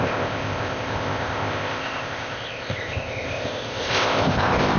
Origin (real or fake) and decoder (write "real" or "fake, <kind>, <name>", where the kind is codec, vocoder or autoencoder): fake, codec, ZipCodec